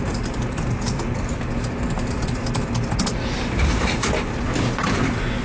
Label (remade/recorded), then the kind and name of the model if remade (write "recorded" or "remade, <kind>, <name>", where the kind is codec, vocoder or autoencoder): recorded